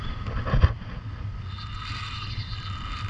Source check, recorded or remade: recorded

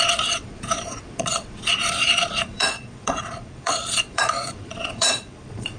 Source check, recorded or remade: remade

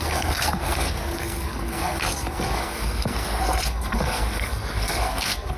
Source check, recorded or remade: remade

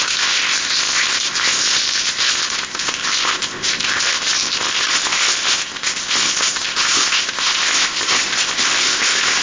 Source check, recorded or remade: remade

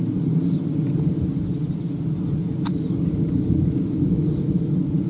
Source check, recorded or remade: recorded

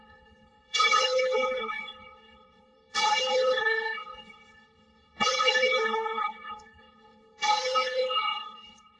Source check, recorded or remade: remade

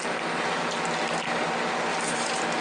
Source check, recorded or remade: recorded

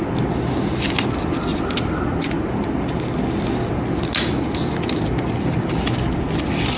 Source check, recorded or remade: recorded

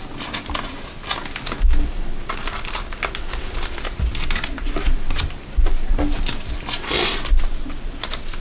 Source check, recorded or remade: recorded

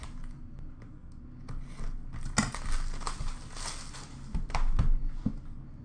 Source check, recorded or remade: recorded